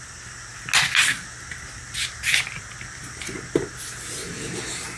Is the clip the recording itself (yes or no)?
yes